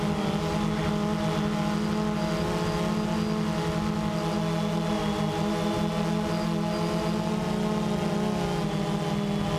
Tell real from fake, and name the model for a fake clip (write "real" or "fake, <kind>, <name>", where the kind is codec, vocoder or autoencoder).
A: real